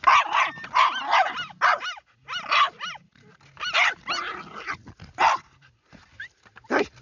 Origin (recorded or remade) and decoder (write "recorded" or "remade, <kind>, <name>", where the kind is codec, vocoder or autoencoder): recorded